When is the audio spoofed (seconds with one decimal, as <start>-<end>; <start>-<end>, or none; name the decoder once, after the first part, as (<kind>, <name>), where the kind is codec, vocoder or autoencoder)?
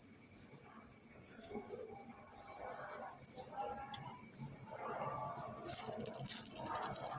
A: 1.1-1.7 (codec, SNAC)